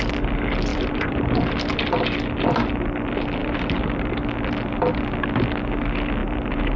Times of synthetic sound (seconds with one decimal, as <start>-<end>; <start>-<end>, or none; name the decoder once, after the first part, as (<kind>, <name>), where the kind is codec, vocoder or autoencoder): 0.7-1.2 (vocoder, BigVGAN v2); 3.4-4.1; 6.2-6.8